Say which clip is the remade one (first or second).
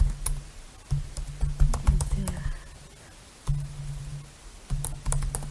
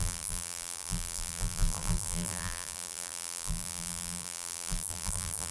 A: second